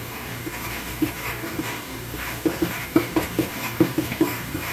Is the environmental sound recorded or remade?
remade